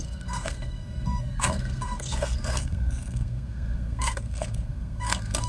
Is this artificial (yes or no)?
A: yes